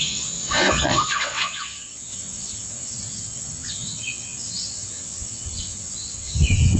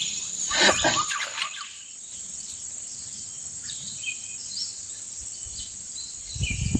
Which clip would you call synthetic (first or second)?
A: first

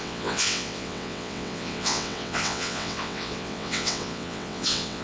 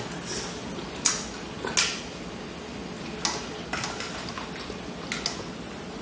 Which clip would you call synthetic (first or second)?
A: first